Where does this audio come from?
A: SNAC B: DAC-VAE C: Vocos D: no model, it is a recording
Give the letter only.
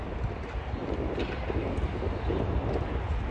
D